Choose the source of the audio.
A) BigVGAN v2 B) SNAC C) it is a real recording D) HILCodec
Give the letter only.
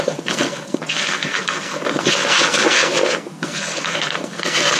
B